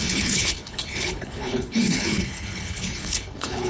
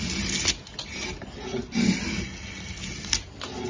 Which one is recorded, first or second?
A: second